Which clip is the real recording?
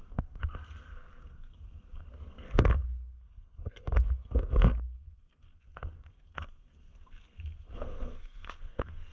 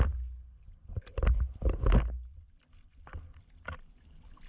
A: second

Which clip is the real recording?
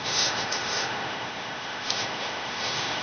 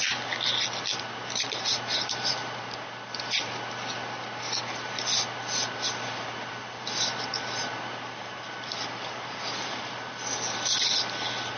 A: second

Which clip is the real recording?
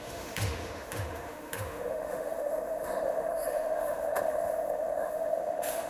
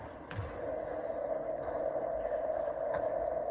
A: second